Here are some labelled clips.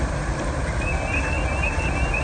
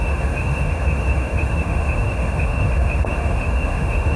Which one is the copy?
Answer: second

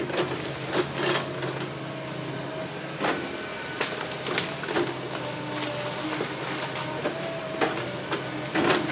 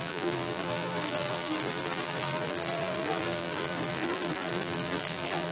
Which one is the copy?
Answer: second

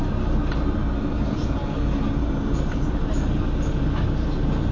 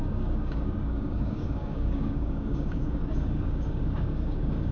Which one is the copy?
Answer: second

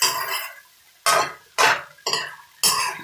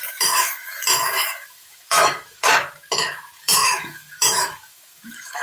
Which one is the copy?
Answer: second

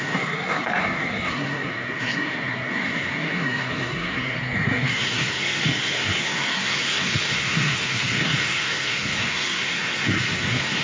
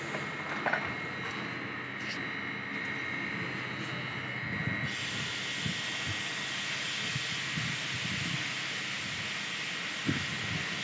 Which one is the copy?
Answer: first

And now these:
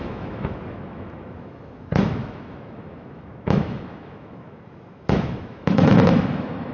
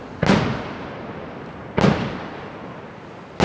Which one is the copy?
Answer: first